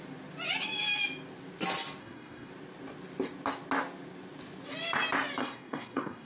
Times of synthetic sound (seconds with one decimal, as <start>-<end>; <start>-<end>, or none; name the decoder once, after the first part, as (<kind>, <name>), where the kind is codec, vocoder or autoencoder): 2.0-2.5 (codec, SNAC); 5.4-6.3